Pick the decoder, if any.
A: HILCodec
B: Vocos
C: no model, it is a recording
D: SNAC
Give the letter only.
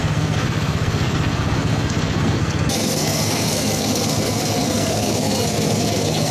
D